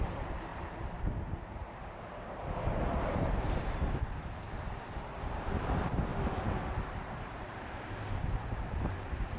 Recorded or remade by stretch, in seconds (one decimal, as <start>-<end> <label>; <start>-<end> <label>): 0.0-6.1 remade; 6.1-6.9 recorded; 6.9-9.4 remade

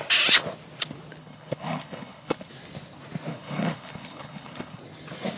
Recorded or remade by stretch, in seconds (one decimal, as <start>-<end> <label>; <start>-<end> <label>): 0.0-1.2 recorded; 1.2-2.5 remade; 2.5-3.3 recorded; 3.3-4.8 remade; 4.8-5.4 recorded

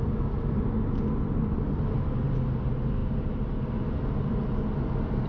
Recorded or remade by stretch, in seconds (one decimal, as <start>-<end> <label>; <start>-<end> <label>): 0.0-5.3 recorded

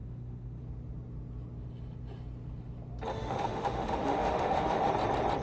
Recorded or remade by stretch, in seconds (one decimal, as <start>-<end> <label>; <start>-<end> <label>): 0.0-0.6 remade; 0.6-3.1 recorded; 3.1-4.9 remade; 4.9-5.4 recorded